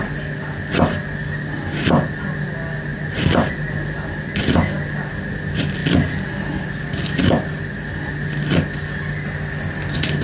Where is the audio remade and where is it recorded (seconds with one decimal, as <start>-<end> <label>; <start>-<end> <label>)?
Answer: 0.0-1.2 remade; 1.2-2.1 recorded; 2.1-5.8 remade; 5.8-7.6 recorded; 7.6-10.2 remade